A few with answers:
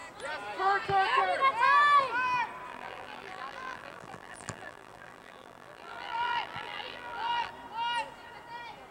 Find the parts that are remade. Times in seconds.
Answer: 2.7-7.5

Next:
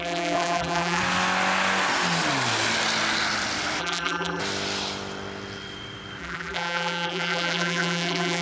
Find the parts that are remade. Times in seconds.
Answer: 0.0-1.0; 3.8-4.4; 6.2-8.4